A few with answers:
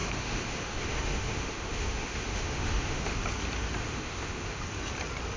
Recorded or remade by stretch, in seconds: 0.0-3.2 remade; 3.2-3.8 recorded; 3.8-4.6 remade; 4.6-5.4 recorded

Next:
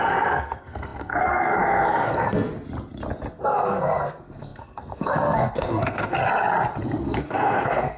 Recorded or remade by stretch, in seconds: 0.0-2.5 remade; 2.5-3.3 recorded; 3.3-6.2 remade; 6.2-7.0 recorded; 7.0-8.0 remade

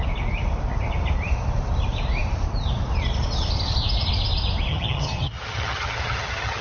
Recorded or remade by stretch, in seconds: 0.0-4.7 recorded; 4.7-6.6 remade